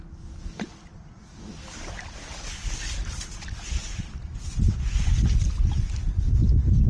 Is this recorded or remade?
recorded